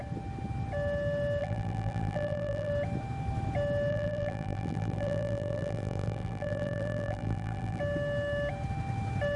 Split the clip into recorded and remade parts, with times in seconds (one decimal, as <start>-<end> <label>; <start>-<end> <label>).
0.0-1.4 recorded; 1.4-2.7 remade; 2.7-3.9 recorded; 3.9-7.8 remade; 7.8-9.4 recorded